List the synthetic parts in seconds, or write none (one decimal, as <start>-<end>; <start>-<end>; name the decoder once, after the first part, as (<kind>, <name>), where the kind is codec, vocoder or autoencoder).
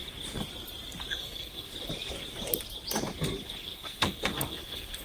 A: 1.1-1.7 (codec, SNAC); 3.6-5.0